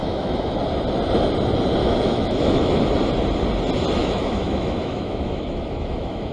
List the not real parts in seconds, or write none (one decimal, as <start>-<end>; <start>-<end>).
0.0-0.6; 1.8-2.8; 4.0-6.3